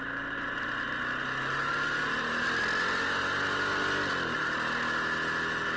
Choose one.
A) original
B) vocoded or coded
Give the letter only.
A